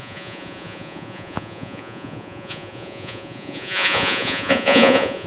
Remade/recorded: remade